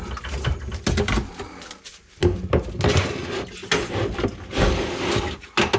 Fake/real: real